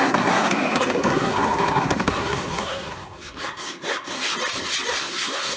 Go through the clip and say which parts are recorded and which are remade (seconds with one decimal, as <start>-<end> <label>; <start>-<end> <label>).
0.0-4.3 remade; 4.3-5.0 recorded; 5.0-5.6 remade